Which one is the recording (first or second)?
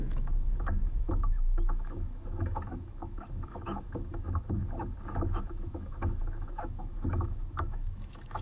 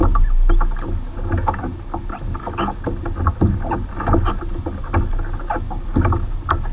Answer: second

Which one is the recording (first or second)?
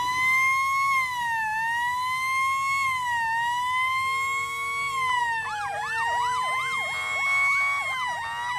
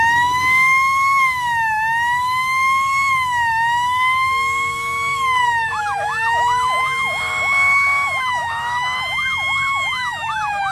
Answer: first